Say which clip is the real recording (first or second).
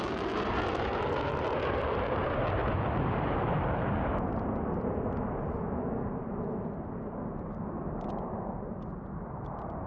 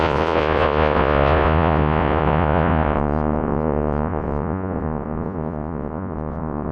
first